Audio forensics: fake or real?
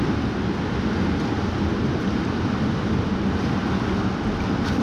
real